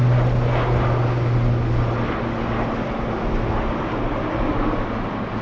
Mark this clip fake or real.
real